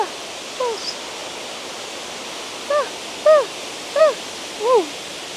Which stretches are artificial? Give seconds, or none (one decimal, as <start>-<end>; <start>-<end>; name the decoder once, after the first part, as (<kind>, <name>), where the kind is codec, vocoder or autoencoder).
none